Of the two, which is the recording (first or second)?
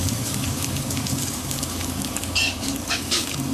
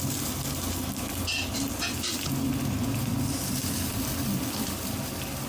second